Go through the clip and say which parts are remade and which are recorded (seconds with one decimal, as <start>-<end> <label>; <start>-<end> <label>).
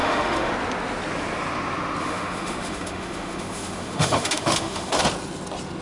0.0-0.5 remade; 0.5-2.0 recorded; 2.0-5.0 remade; 5.0-5.8 recorded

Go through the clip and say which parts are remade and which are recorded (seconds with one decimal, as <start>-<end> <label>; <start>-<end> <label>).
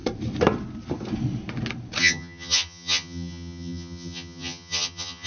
0.0-2.0 recorded; 2.0-5.3 remade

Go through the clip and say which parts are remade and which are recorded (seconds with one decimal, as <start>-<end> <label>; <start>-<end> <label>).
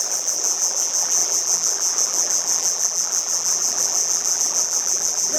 0.0-5.4 remade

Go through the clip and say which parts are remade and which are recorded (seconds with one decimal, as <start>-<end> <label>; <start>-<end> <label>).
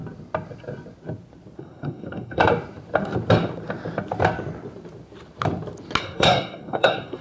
0.0-1.6 recorded; 1.6-2.4 remade; 2.4-6.0 recorded; 6.0-7.2 remade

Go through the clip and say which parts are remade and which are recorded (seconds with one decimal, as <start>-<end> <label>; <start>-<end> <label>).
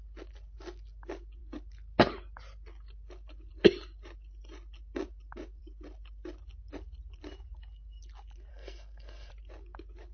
0.0-8.5 recorded; 8.5-9.3 remade; 9.3-10.1 recorded